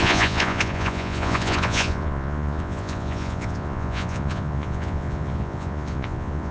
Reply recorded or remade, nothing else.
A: remade